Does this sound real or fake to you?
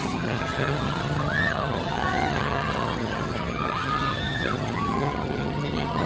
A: fake